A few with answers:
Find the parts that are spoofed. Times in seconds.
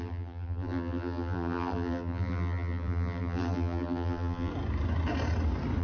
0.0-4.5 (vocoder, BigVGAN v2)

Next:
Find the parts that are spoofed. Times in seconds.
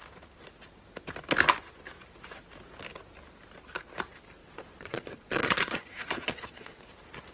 4.4-6.8 (vocoder, Vocos)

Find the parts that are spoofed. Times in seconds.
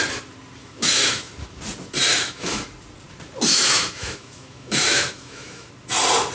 0.6-1.3 (autoencoder, DAC-VAE); 2.1-2.6; 3.5-5.7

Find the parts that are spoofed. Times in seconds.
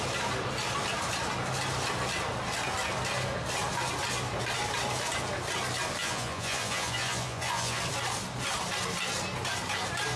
6.0-7.8 (vocoder, Vocos)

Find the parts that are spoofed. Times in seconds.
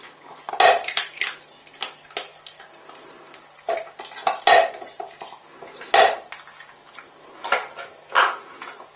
none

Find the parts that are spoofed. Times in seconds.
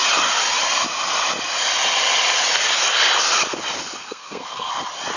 4.0-4.7 (codec, SNAC)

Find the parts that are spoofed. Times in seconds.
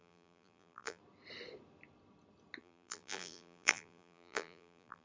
0.0-1.0 (vocoder, BigVGAN v2); 2.6-5.0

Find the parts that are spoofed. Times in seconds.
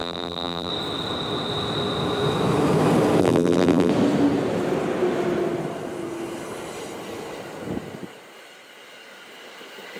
0.0-0.7 (vocoder, BigVGAN v2); 3.2-3.9